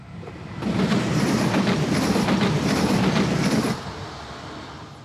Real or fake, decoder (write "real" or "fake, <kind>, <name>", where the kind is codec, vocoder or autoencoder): real